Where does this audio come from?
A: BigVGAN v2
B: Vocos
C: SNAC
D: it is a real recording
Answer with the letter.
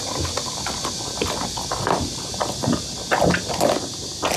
D